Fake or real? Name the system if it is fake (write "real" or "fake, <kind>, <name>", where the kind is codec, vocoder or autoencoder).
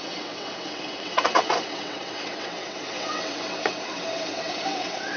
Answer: fake, vocoder, WaveNeXt